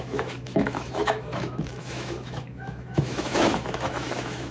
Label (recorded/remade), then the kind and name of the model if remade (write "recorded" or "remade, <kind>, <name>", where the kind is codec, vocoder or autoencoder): remade, autoencoder, DAC-VAE